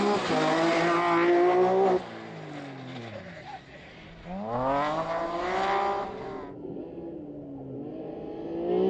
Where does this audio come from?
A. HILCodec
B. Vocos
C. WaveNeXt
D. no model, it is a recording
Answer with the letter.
D